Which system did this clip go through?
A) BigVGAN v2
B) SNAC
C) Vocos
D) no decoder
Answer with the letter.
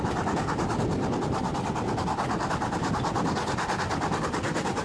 D